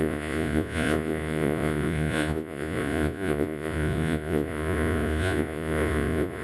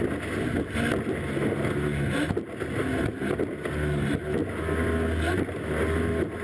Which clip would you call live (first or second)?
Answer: second